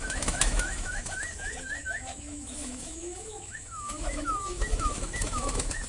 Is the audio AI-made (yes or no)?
yes